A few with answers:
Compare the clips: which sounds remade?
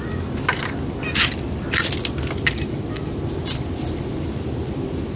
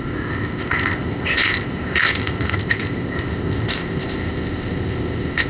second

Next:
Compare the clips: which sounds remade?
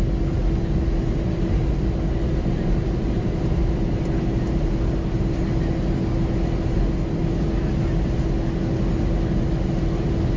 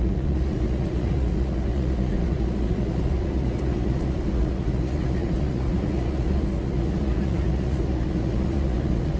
second